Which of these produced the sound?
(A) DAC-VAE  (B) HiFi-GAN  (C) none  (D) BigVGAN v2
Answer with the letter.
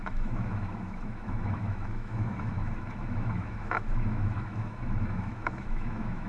A